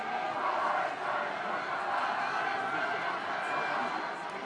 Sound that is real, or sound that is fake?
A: real